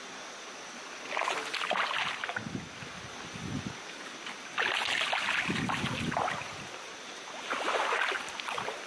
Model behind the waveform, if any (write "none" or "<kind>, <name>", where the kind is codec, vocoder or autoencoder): none